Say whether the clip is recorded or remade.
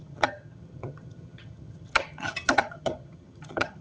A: remade